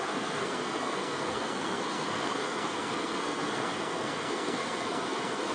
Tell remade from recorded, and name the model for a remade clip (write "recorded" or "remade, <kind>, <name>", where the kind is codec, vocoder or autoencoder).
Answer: remade, codec, SNAC